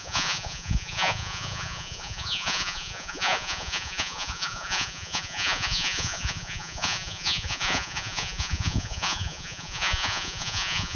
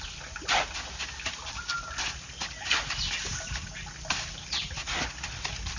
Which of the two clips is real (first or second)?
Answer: second